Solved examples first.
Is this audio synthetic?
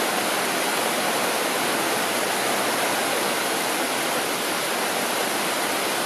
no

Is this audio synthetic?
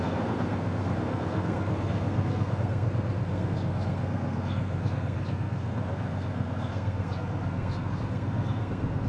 yes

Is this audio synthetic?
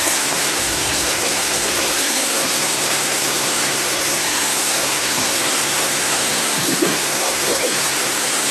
yes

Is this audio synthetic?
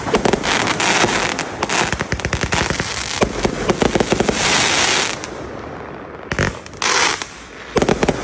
no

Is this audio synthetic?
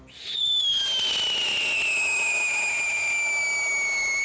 no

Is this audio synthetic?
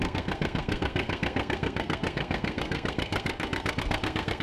yes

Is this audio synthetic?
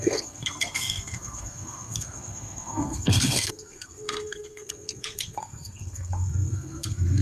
yes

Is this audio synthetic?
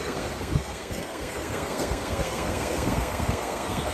yes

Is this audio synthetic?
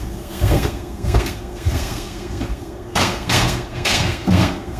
yes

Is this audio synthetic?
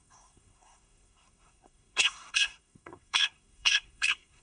yes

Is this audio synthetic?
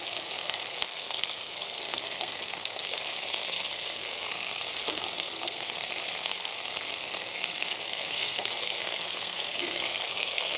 yes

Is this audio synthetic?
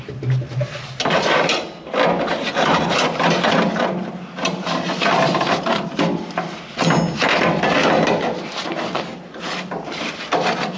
no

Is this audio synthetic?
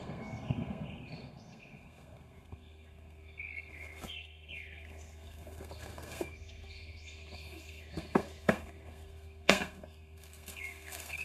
yes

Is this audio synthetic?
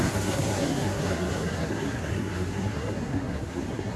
yes